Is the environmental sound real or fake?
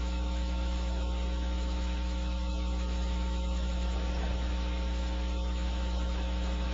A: fake